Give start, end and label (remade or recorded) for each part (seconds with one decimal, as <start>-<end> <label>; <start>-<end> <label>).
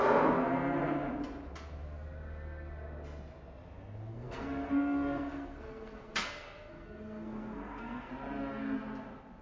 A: 0.0-4.1 recorded; 4.1-8.1 remade; 8.1-9.4 recorded